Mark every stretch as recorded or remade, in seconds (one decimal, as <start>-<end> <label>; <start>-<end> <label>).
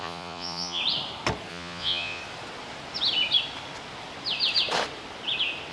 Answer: 0.0-0.8 remade; 0.8-1.5 recorded; 1.5-2.2 remade; 2.2-5.7 recorded